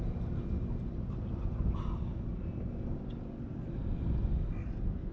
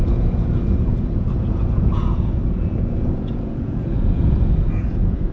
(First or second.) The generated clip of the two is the second